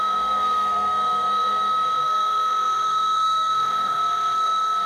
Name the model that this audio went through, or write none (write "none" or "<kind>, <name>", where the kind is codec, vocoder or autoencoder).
codec, SNAC